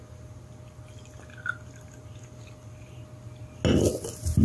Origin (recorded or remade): recorded